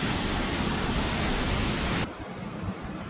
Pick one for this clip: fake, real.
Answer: real